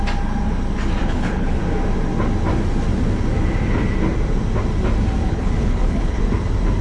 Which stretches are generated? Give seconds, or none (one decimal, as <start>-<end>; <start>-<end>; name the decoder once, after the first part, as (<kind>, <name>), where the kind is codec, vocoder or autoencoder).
1.0-1.6 (codec, HILCodec); 5.2-6.2